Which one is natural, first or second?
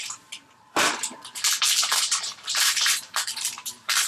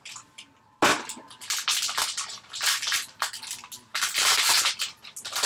second